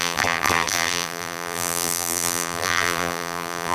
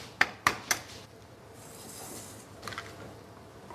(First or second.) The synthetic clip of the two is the first